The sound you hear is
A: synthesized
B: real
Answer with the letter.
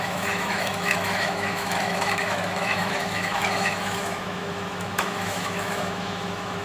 A